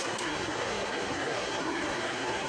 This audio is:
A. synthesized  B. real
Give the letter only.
A